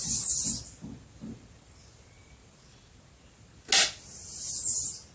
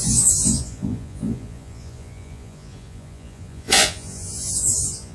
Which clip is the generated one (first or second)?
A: second